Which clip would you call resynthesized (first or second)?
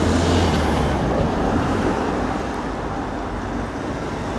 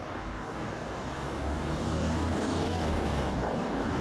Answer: second